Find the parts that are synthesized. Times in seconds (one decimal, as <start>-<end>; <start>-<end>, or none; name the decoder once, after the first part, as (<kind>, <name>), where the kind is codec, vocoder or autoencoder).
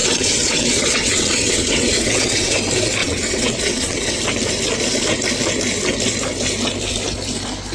0.0-2.6 (vocoder, WaveNeXt); 3.0-4.2